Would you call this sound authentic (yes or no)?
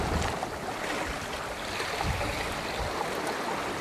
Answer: yes